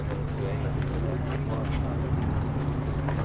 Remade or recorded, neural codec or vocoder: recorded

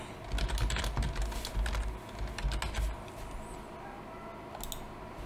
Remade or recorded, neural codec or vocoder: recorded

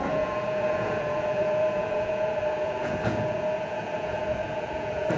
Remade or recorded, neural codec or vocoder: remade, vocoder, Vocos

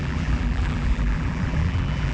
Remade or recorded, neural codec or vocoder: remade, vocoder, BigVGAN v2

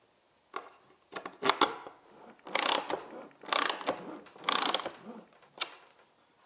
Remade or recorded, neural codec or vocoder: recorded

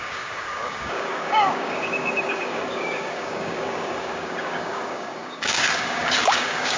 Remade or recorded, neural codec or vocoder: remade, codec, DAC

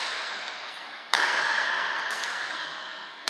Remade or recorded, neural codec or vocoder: remade, codec, SNAC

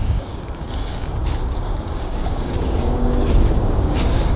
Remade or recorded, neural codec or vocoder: remade, codec, DAC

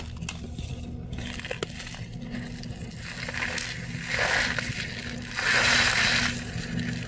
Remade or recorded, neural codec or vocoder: recorded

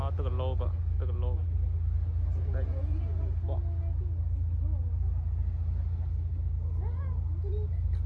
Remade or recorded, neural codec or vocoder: recorded